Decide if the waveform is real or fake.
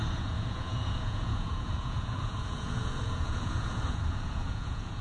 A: fake